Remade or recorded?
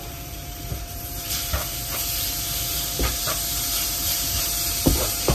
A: remade